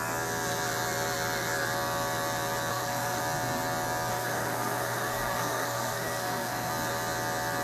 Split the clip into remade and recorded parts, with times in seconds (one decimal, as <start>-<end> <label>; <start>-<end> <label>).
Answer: 0.0-2.7 recorded; 2.7-3.2 remade; 3.2-4.1 recorded; 4.1-6.7 remade; 6.7-7.6 recorded